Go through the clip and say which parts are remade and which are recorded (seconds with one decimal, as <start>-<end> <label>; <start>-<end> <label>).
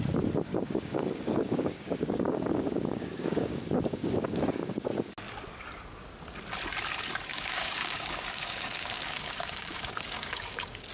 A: 0.0-0.5 recorded; 0.5-5.0 remade; 5.0-7.3 recorded; 7.3-10.9 remade